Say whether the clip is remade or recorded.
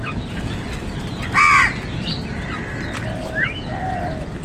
recorded